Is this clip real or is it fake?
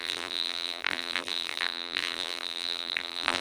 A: fake